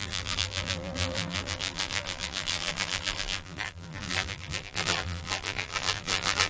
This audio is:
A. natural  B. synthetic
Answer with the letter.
B